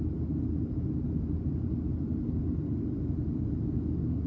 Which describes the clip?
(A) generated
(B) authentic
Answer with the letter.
B